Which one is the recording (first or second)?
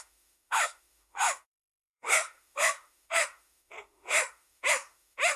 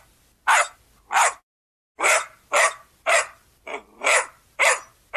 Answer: second